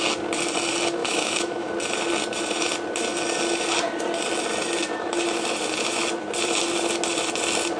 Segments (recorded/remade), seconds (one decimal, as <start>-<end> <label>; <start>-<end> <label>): 0.0-1.0 recorded; 1.0-1.7 remade; 1.7-7.8 recorded